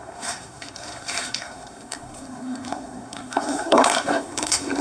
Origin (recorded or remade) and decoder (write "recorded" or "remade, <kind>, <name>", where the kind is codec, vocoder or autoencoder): remade, codec, SNAC